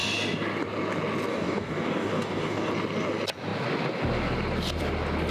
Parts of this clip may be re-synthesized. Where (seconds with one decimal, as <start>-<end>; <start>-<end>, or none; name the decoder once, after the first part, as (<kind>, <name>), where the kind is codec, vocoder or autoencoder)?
1.3-2.7 (codec, DAC)